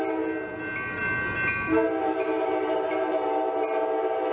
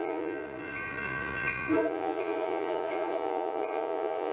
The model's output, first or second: second